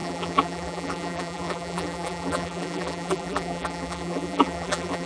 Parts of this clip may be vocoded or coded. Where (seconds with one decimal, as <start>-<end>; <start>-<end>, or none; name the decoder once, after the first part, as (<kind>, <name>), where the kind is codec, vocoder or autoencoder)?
0.0-5.1 (vocoder, BigVGAN v2)